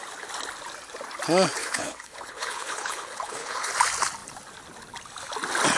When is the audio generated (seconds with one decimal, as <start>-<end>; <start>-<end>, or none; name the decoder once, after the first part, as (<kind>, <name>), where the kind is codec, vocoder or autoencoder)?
1.6-3.7 (codec, HILCodec)